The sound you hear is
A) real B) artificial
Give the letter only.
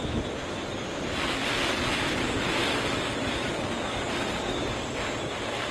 A